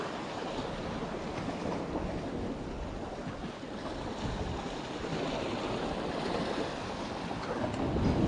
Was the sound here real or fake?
real